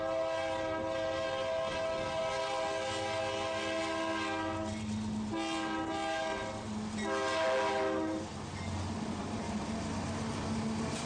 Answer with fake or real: real